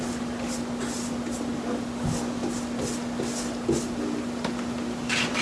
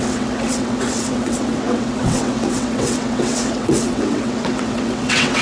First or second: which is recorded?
first